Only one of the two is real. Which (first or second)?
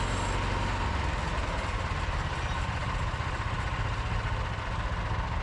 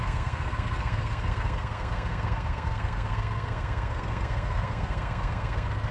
first